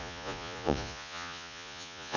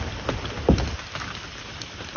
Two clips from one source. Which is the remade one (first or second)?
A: first